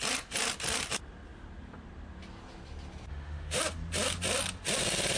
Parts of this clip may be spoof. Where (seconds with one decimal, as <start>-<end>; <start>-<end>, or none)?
3.1-3.6